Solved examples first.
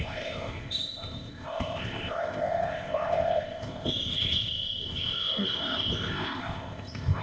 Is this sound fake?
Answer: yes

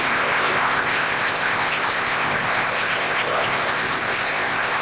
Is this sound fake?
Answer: yes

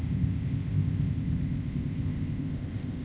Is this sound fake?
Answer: yes